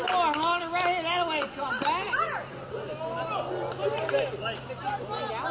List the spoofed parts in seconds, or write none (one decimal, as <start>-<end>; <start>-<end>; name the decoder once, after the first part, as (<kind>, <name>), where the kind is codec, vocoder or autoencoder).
none